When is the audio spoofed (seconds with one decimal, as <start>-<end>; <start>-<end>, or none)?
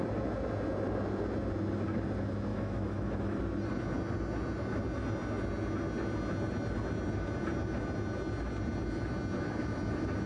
2.5-3.4